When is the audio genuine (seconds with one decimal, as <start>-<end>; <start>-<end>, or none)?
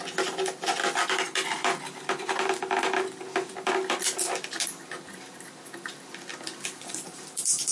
0.0-6.3